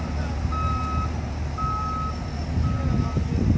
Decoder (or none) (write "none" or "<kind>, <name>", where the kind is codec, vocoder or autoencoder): none